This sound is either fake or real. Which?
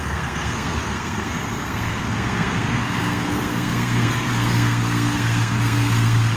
fake